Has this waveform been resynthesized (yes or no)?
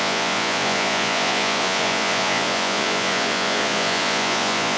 yes